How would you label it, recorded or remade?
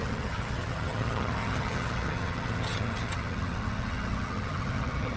remade